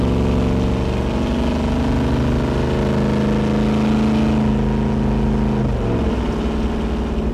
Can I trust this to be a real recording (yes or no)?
yes